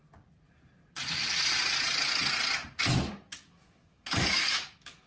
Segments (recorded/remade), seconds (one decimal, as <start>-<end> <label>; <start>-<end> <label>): 0.0-3.1 recorded; 3.1-5.1 remade